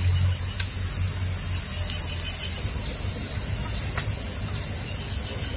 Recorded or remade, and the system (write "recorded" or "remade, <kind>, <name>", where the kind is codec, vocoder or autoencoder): recorded